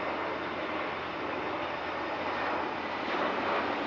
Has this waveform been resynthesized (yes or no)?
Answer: no